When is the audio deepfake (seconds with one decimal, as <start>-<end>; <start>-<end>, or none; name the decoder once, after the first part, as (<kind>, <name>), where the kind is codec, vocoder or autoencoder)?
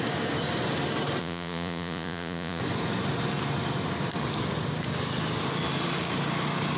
1.2-2.6 (vocoder, Vocos)